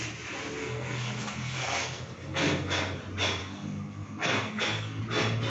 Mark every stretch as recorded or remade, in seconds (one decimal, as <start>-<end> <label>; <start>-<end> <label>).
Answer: 0.0-0.6 recorded; 0.6-3.0 remade; 3.0-3.4 recorded; 3.4-5.0 remade; 5.0-5.5 recorded